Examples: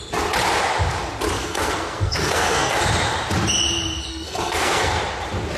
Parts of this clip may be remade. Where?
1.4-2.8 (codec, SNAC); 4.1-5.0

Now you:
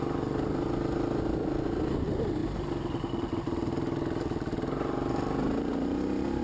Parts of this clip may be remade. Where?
none

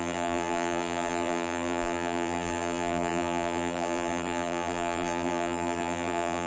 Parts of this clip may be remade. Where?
0.0-6.5 (vocoder, BigVGAN v2)

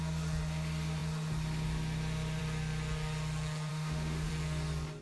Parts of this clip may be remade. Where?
3.7-4.3 (autoencoder, DAC-VAE)

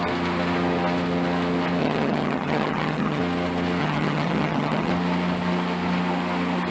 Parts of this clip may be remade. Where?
1.8-3.2 (vocoder, HiFi-GAN); 3.8-4.9